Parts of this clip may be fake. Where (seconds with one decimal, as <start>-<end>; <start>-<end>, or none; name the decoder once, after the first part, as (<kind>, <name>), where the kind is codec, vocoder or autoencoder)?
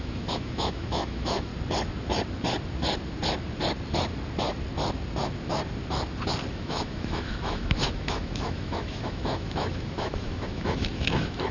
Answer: 0.0-1.5 (autoencoder, DAC-VAE); 6.5-11.5